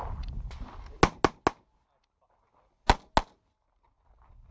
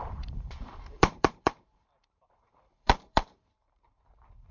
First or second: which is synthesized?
second